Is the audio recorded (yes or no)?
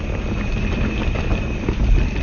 yes